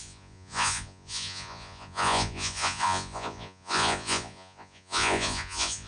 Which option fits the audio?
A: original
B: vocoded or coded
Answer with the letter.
B